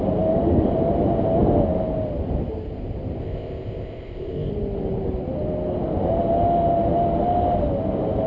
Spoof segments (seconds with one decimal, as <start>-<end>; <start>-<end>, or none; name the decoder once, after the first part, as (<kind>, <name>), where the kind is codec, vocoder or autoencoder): 3.2-4.5 (codec, ZipCodec)